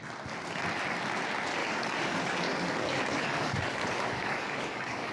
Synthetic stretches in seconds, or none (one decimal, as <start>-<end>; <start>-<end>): 1.6-5.1